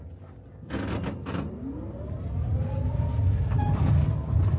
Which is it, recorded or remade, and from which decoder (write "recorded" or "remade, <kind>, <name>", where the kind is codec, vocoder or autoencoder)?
recorded